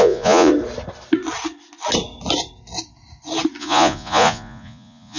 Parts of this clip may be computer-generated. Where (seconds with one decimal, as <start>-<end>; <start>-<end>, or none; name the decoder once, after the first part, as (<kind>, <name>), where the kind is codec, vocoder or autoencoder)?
0.0-0.5 (vocoder, Vocos); 3.6-5.2